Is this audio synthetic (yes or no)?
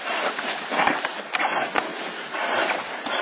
no